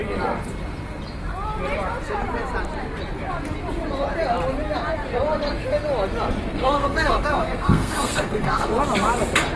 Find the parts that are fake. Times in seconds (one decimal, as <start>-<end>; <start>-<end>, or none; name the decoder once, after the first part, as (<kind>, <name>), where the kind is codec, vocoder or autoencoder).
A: 6.5-8.7 (codec, SNAC)